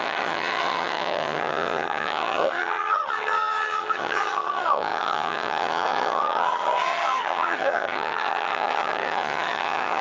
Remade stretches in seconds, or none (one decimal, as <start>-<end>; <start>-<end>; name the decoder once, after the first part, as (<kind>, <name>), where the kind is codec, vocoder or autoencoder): 0.0-10.0 (vocoder, HiFi-GAN)